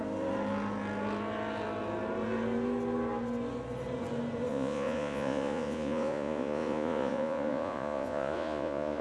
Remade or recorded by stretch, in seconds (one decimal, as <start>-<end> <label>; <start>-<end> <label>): 0.0-4.5 recorded; 4.5-9.0 remade